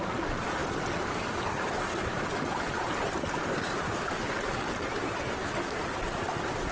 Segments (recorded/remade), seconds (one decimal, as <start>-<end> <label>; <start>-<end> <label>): 0.0-6.7 recorded